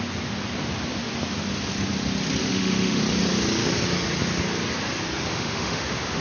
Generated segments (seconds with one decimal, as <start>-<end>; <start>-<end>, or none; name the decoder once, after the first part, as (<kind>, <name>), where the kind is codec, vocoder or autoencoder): 2.4-3.0 (autoencoder, DAC-VAE); 5.3-6.2

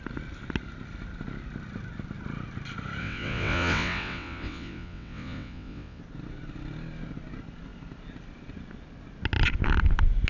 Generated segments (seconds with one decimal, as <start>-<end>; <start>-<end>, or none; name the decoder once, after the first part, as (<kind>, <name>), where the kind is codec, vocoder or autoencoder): 3.0-6.0 (vocoder, WaveNeXt)

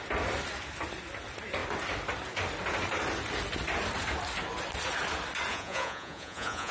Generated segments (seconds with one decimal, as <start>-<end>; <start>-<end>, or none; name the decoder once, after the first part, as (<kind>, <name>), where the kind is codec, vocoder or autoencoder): 5.5-6.7 (vocoder, Vocos)

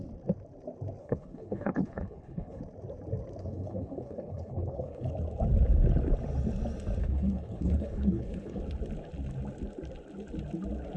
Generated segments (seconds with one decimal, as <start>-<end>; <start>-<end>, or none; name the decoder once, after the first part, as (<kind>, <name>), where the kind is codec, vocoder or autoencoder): 1.0-2.6 (codec, HILCodec); 3.4-5.1; 7.0-8.6

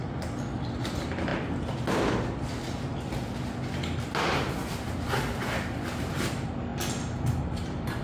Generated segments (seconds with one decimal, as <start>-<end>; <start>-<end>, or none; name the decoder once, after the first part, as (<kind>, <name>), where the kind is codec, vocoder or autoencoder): 0.0-1.3 (vocoder, BigVGAN v2); 6.1-6.7; 7.4-8.0

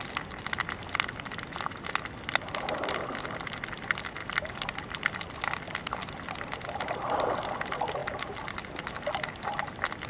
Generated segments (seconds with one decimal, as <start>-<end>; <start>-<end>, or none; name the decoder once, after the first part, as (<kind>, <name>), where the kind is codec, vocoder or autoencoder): none

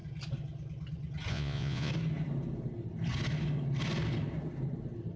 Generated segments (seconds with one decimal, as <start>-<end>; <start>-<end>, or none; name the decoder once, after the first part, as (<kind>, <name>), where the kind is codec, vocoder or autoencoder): 1.3-1.9 (vocoder, Vocos)